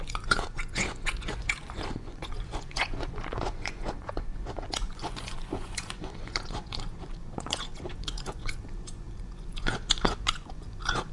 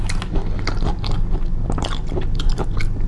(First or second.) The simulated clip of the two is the first